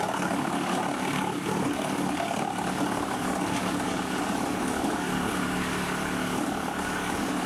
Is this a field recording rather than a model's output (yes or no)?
no